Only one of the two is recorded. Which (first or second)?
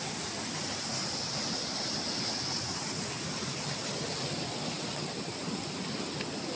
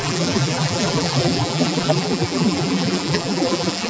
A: first